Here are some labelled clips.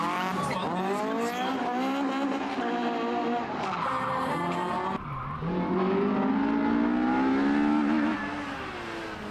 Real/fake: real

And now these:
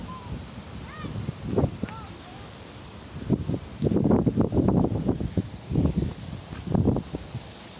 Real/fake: real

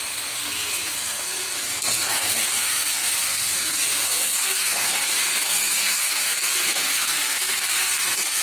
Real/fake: fake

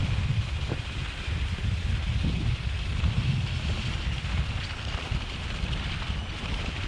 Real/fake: real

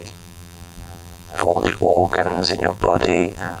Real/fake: fake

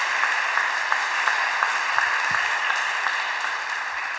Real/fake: fake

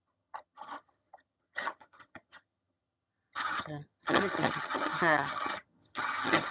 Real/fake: fake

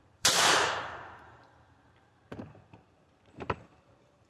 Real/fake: fake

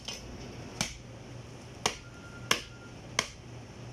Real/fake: real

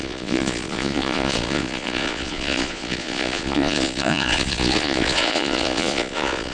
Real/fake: fake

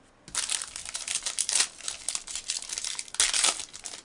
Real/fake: real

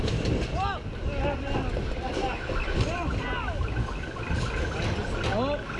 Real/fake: real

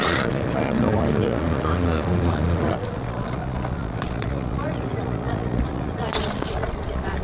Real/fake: fake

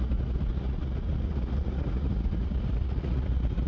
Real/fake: fake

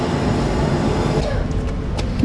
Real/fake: fake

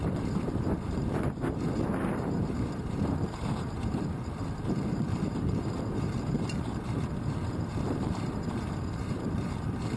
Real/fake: fake